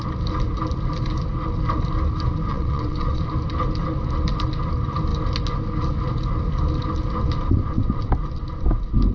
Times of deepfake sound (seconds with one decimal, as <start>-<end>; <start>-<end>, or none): 2.5-3.2